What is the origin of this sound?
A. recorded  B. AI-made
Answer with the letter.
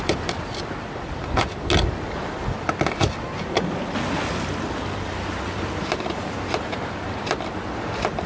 A